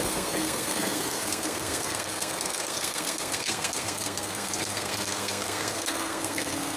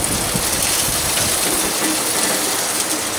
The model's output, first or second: first